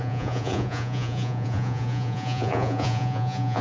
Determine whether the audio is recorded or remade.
remade